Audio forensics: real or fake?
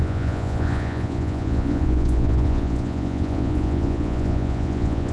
fake